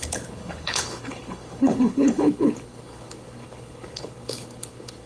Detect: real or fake fake